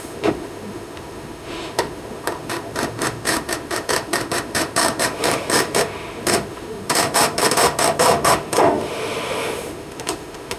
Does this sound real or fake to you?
fake